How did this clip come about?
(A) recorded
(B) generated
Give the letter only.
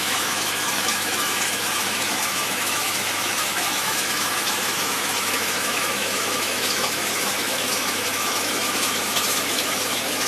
B